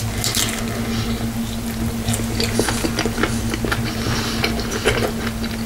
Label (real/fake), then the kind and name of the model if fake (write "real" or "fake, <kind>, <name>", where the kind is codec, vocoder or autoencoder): real